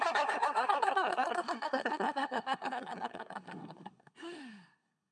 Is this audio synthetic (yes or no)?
yes